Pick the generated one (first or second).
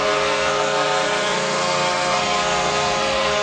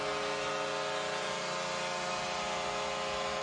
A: first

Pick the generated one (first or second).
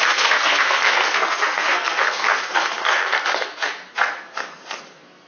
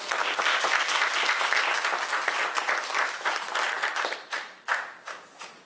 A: first